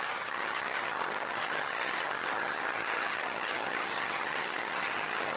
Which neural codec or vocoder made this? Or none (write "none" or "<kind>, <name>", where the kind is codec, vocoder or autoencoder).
vocoder, HiFi-GAN